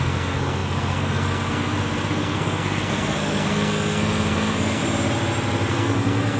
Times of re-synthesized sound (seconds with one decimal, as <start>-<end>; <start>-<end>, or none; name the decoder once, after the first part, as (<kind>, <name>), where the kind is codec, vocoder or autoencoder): 0.0-4.8 (codec, SNAC); 5.7-6.4